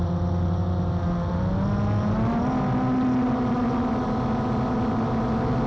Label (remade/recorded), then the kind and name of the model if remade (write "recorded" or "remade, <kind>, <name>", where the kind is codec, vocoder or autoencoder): recorded